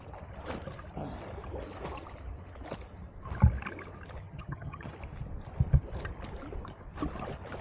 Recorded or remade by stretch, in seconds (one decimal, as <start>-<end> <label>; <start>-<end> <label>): 0.0-4.2 recorded; 4.2-4.9 remade; 4.9-7.6 recorded